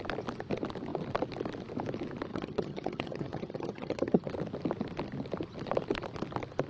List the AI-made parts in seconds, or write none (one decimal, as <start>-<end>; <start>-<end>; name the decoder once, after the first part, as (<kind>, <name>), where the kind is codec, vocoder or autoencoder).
2.3-4.3 (vocoder, HiFi-GAN)